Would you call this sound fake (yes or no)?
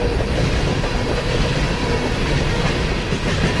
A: no